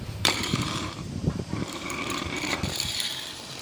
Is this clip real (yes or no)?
no